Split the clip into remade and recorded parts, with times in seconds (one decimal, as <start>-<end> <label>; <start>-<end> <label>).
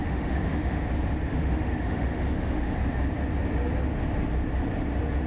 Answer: 0.0-0.8 remade; 0.8-1.3 recorded; 1.3-2.8 remade; 2.8-5.3 recorded